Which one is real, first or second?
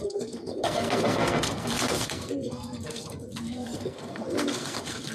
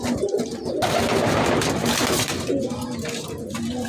second